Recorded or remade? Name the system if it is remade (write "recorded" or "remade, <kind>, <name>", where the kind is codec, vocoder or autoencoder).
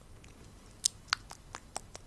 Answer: recorded